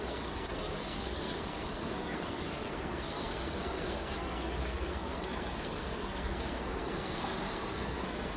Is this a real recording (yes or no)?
no